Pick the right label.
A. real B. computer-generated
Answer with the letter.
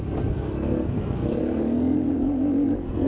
B